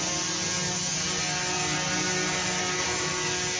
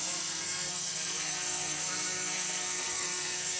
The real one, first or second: first